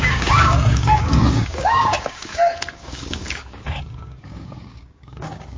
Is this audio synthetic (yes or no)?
yes